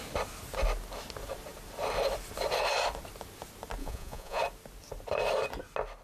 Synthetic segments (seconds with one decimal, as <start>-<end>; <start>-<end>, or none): 3.8-4.4